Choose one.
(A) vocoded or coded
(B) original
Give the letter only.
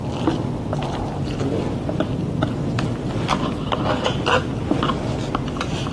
B